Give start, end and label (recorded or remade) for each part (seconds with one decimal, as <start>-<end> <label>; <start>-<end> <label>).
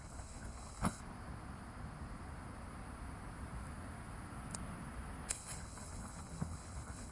0.0-1.0 remade; 1.0-5.3 recorded; 5.3-7.1 remade